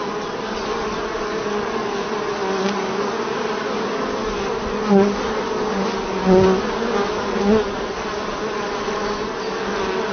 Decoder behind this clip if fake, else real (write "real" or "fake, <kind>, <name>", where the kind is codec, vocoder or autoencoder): real